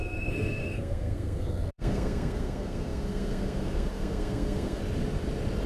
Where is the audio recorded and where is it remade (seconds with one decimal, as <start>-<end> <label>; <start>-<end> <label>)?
0.0-4.8 remade; 4.8-5.7 recorded